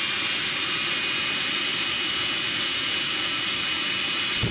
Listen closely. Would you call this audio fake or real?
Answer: real